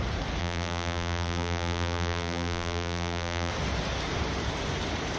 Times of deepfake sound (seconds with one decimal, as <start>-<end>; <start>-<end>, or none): 0.4-3.5